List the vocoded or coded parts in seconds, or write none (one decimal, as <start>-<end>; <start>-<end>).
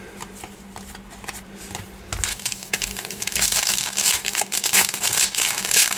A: 2.3-6.0